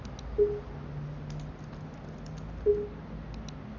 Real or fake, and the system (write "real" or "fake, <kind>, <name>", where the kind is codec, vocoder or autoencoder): real